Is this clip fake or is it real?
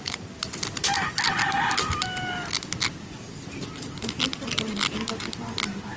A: real